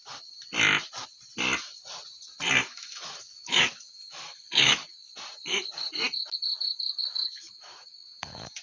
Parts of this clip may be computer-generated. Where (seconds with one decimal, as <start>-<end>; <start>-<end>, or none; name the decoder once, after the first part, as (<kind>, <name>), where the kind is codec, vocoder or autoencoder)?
2.7-4.8 (autoencoder, DAC-VAE); 7.0-8.6